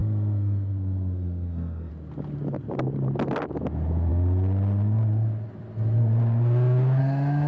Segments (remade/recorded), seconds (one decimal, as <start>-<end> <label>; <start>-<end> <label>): 0.0-1.9 remade; 1.9-7.5 recorded